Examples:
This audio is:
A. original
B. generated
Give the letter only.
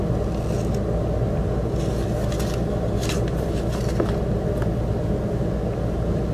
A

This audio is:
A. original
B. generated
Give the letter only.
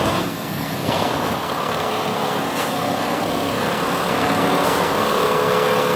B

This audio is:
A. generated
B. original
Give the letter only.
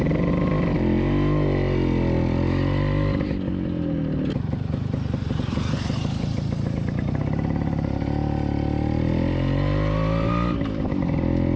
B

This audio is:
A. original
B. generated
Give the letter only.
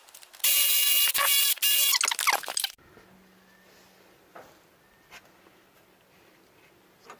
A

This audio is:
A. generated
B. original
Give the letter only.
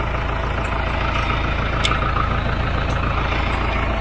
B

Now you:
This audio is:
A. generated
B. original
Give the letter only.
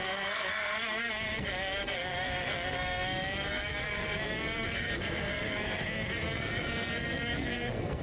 A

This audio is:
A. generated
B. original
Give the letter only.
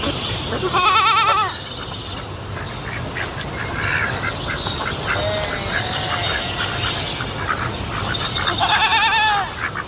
B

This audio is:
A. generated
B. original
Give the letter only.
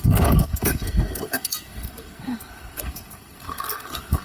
A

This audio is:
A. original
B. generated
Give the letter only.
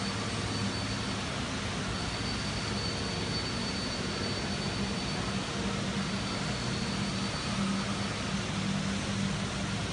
A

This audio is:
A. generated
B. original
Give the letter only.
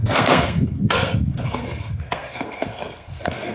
A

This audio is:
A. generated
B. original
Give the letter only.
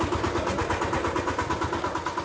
B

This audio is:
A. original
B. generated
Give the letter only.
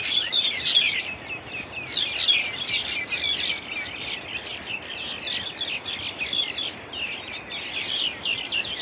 A